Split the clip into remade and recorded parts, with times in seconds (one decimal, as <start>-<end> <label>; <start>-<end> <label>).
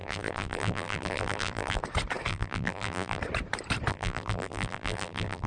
0.0-1.8 remade; 1.8-2.3 recorded; 2.3-3.2 remade; 3.2-3.9 recorded; 3.9-5.5 remade